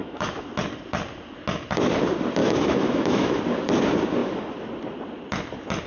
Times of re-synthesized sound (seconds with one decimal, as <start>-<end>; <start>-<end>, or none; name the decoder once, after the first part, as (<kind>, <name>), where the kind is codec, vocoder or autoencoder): 0.0-0.5 (autoencoder, DAC-VAE); 2.4-3.4